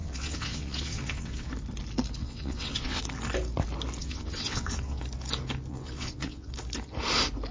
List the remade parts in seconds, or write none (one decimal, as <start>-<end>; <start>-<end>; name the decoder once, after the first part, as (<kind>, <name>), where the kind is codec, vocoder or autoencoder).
0.0-1.5 (vocoder, WaveNeXt); 2.2-3.0; 4.0-5.0; 5.7-6.5